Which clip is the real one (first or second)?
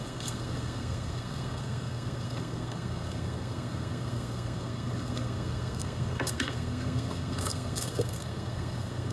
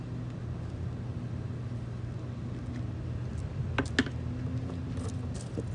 second